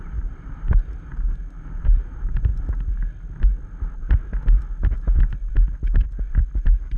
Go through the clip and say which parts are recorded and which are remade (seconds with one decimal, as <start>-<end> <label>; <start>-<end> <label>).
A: 0.0-2.5 remade; 2.5-6.6 recorded; 6.6-7.0 remade